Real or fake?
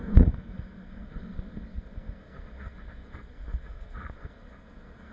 fake